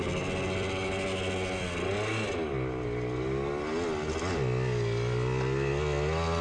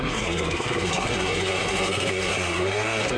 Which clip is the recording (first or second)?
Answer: first